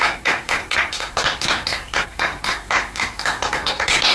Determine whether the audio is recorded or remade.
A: remade